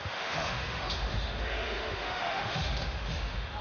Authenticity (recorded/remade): remade